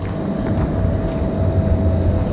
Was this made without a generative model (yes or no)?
yes